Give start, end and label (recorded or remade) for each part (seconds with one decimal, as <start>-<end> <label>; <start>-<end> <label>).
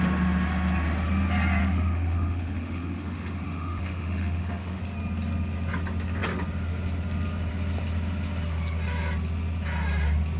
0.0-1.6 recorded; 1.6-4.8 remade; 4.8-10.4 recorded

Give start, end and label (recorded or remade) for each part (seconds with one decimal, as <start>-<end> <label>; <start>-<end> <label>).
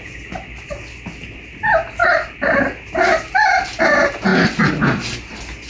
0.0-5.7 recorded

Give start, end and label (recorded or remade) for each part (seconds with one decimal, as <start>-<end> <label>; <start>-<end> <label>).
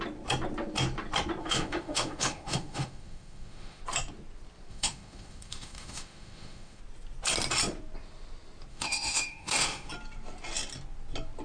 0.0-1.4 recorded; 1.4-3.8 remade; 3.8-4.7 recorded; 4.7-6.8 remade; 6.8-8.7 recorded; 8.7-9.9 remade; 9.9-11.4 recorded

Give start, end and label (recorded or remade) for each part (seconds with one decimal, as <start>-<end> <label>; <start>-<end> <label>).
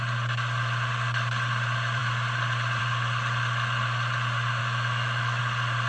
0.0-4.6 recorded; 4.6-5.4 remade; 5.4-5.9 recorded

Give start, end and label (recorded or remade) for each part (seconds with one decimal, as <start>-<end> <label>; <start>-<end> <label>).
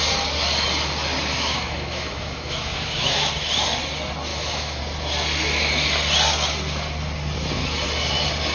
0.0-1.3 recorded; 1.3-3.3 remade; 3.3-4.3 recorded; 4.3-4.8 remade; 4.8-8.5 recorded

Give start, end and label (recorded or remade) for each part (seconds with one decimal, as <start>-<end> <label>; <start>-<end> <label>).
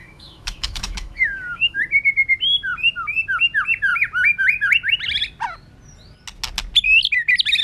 0.0-1.8 remade; 1.8-7.6 recorded